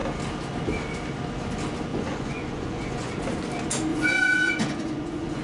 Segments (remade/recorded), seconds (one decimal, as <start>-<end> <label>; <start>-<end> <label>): 0.0-1.9 recorded; 1.9-3.1 remade; 3.1-3.9 recorded; 3.9-5.4 remade

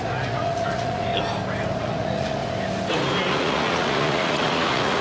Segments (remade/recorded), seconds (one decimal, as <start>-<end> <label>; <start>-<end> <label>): 0.0-1.1 remade; 1.1-1.8 recorded; 1.8-2.4 remade; 2.4-3.3 recorded; 3.3-5.0 remade